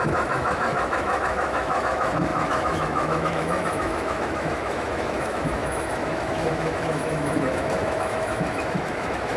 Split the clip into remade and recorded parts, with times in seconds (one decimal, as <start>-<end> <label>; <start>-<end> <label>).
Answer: 0.0-9.4 remade